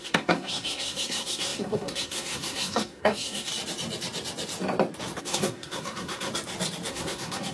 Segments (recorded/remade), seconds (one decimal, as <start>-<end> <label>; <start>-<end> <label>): 0.0-3.5 remade; 3.5-5.2 recorded; 5.2-6.3 remade; 6.3-6.9 recorded; 6.9-7.5 remade